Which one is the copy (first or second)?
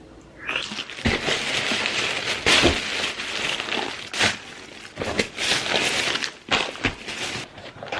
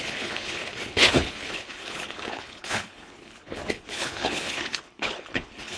second